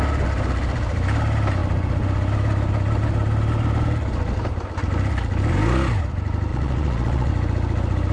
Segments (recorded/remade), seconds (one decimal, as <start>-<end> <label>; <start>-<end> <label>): 0.0-6.5 recorded; 6.5-7.3 remade; 7.3-8.1 recorded